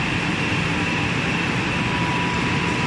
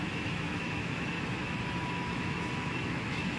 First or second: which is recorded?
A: first